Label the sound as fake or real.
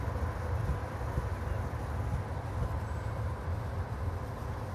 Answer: real